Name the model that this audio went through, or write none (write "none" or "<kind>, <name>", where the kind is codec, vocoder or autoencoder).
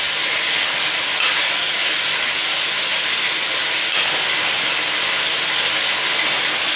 none